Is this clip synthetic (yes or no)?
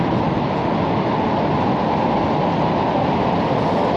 no